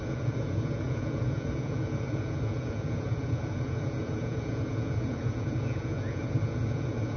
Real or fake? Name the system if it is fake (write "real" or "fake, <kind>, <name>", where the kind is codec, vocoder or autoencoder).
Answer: fake, vocoder, Vocos